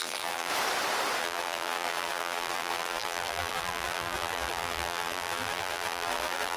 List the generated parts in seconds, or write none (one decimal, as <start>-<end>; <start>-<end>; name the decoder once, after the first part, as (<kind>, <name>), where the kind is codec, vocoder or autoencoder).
0.0-0.5 (vocoder, BigVGAN v2); 1.2-6.6

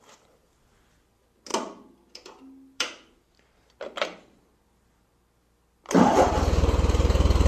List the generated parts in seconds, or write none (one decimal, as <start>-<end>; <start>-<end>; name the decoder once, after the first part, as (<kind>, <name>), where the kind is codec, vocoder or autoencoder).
none

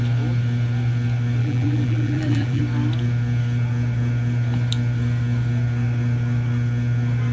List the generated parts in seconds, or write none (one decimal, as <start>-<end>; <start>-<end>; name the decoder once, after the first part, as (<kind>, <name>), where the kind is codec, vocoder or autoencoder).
1.4-2.6 (vocoder, BigVGAN v2)

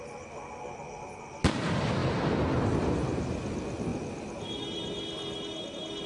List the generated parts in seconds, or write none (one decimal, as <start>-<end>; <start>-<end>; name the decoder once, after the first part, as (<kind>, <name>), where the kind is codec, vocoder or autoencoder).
2.0-3.0 (vocoder, BigVGAN v2)

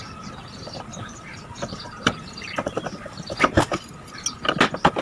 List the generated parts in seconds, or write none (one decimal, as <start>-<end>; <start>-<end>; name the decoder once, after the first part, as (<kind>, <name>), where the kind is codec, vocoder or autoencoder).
0.9-3.9 (vocoder, BigVGAN v2)